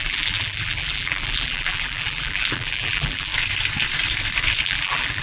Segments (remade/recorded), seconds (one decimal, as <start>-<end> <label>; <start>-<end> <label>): 0.0-3.3 remade; 3.3-4.6 recorded; 4.6-5.2 remade